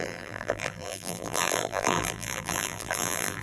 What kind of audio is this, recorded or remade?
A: remade